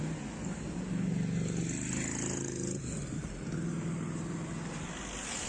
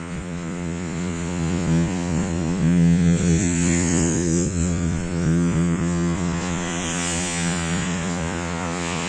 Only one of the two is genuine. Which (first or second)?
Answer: first